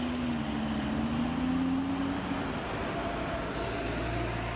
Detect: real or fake real